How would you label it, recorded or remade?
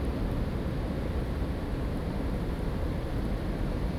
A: recorded